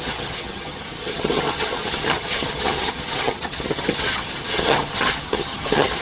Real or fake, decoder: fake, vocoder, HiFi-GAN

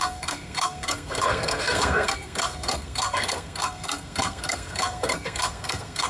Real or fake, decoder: fake, codec, SNAC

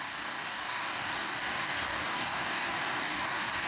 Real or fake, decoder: fake, codec, DAC